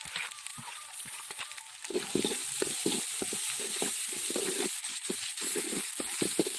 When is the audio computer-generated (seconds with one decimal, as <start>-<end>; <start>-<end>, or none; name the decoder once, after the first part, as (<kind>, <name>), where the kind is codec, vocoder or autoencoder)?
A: 0.5-1.4 (vocoder, Vocos); 4.8-5.6